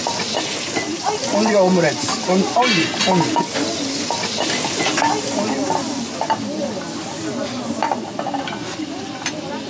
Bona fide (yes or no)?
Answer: yes